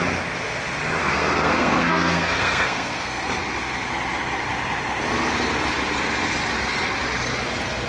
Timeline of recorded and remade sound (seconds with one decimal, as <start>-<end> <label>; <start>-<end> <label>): 0.0-1.0 recorded; 1.0-3.2 remade; 3.2-7.9 recorded